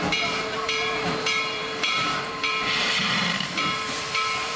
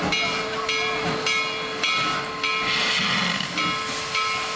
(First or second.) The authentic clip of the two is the second